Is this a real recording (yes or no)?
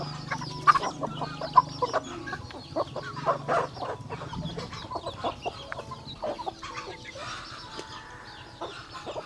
yes